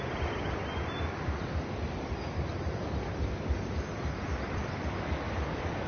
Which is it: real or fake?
fake